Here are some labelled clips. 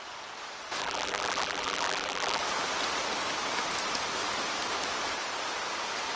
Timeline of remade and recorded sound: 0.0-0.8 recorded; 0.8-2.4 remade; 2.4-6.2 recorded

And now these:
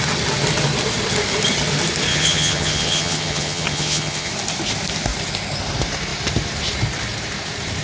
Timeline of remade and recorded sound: 0.0-2.1 recorded; 2.1-4.3 remade; 4.3-7.8 recorded

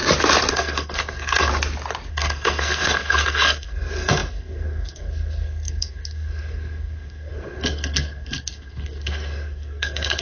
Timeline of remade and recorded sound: 0.0-0.5 recorded; 0.5-1.5 remade; 1.5-2.1 recorded; 2.1-10.2 remade

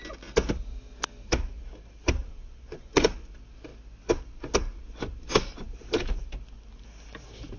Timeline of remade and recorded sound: 0.0-2.3 recorded; 2.3-3.3 remade; 3.3-7.6 recorded

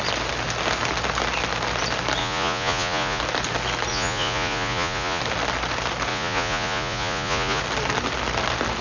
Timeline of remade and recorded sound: 0.0-2.2 recorded; 2.2-3.2 remade; 3.2-3.9 recorded; 3.9-5.2 remade; 5.2-6.1 recorded; 6.1-7.6 remade; 7.6-8.8 recorded